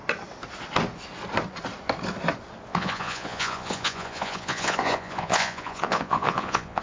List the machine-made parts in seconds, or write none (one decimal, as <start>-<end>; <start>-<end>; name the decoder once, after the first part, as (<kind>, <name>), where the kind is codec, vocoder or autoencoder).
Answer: 2.7-6.8 (vocoder, Vocos)